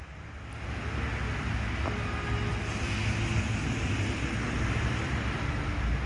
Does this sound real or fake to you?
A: real